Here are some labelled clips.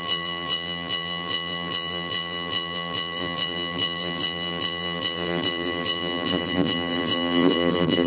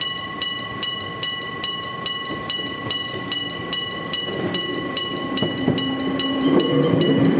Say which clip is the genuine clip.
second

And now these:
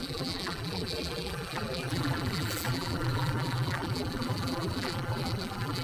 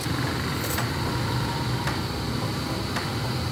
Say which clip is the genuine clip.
second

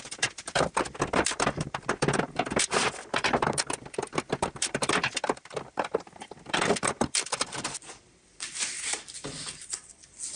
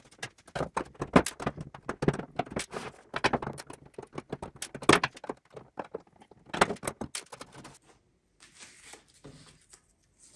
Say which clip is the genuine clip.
second